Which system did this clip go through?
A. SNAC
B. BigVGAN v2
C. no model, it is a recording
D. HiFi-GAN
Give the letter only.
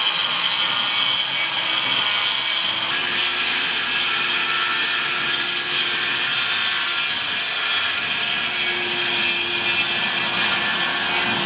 C